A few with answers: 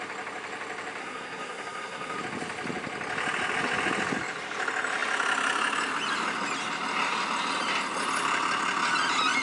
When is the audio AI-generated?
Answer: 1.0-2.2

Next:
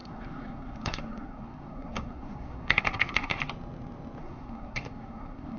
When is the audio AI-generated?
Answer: 0.0-3.4; 4.2-5.6

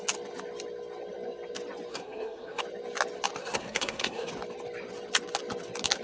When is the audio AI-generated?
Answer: 1.9-2.6; 3.4-4.3

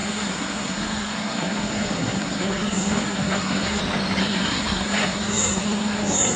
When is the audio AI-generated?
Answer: 0.0-3.8; 4.2-6.4

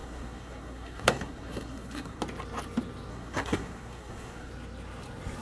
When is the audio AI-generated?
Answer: 0.0-2.2; 3.1-4.5

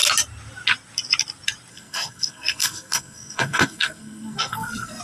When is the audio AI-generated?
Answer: 1.7-5.0

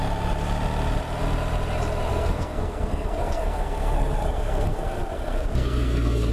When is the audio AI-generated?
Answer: 2.1-6.3

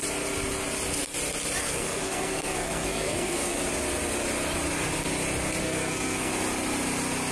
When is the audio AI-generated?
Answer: 1.6-3.6; 5.6-6.3